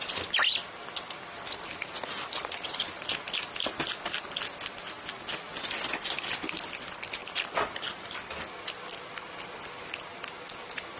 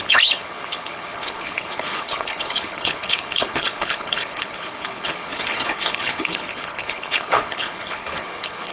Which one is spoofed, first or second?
second